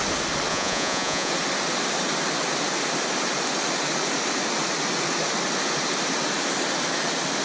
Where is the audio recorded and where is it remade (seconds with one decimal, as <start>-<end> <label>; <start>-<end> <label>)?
0.0-0.5 recorded; 0.5-1.3 remade; 1.3-7.4 recorded